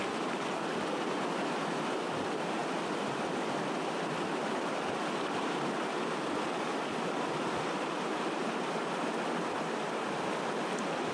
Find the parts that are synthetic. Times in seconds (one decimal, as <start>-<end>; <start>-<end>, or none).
none